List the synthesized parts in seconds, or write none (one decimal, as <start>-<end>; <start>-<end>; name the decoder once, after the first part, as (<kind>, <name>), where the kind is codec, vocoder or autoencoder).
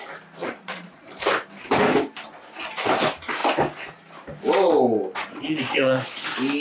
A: 0.4-1.2 (vocoder, Vocos); 5.3-6.1